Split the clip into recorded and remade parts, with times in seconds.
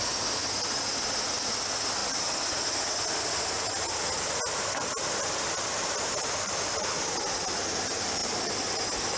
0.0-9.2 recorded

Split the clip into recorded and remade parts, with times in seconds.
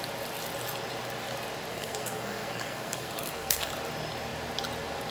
0.0-1.7 recorded; 1.7-3.7 remade; 3.7-5.1 recorded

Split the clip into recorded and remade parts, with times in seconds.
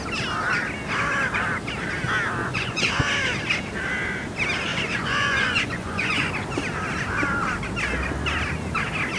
0.0-2.4 recorded; 2.4-2.9 remade; 2.9-4.7 recorded; 4.7-6.3 remade; 6.3-9.2 recorded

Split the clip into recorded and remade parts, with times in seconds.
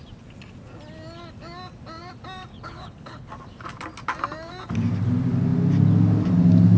0.0-2.5 recorded; 2.5-3.3 remade; 3.3-6.8 recorded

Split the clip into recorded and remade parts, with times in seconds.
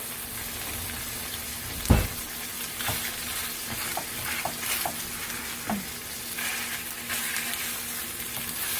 0.0-8.8 recorded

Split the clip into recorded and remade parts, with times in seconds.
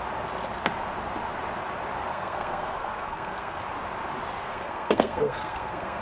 0.0-2.1 recorded; 2.1-3.6 remade; 3.6-4.4 recorded; 4.4-6.0 remade